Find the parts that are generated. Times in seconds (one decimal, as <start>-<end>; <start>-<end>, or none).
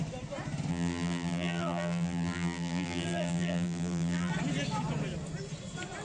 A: 0.7-4.3